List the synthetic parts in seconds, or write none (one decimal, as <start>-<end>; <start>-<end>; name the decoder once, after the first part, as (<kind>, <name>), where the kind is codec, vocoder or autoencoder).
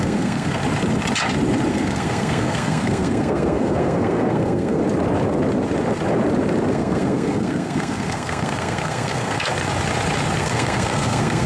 0.0-0.6 (codec, SNAC); 1.7-4.8; 6.7-9.5; 10.4-11.5